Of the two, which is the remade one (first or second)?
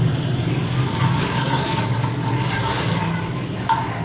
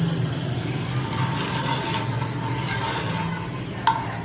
first